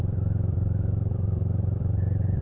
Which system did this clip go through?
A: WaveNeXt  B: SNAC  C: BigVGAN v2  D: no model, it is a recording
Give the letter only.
C